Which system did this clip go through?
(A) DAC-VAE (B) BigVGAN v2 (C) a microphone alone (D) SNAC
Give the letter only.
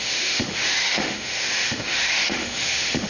A